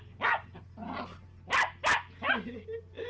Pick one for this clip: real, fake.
real